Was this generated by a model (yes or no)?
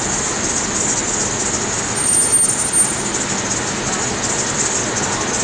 no